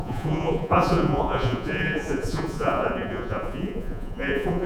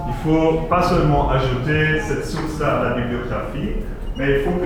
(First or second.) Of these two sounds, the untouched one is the second